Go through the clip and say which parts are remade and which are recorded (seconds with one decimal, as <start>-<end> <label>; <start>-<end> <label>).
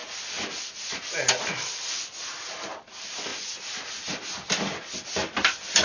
0.0-5.8 recorded